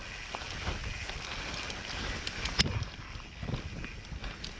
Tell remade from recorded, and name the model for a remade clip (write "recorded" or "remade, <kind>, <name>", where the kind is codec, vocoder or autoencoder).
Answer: recorded